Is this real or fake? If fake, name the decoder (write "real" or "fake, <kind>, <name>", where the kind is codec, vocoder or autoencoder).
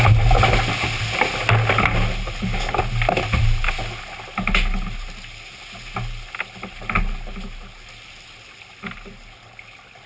real